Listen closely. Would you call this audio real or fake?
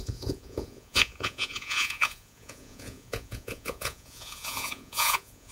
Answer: fake